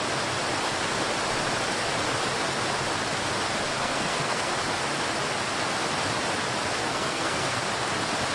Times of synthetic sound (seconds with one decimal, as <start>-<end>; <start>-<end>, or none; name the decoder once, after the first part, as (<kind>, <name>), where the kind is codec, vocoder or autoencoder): 3.8-4.5 (codec, SNAC); 6.8-7.6